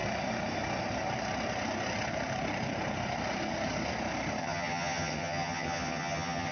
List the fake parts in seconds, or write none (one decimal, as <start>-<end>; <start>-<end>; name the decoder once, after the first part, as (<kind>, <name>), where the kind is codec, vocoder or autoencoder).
4.4-6.5 (vocoder, HiFi-GAN)